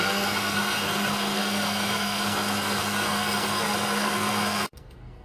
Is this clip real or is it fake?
fake